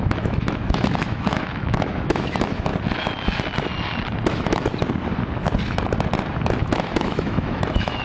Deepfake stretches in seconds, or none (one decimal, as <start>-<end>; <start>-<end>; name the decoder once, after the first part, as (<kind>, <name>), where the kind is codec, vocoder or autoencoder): 0.0-2.7 (autoencoder, DAC-VAE); 4.3-4.7; 6.6-8.0